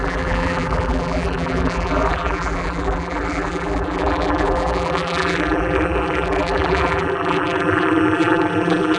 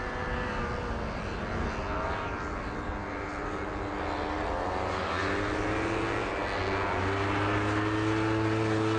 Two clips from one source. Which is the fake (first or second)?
first